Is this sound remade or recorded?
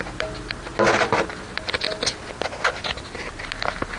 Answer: recorded